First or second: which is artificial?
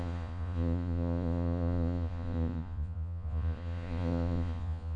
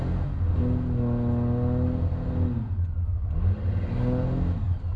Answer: first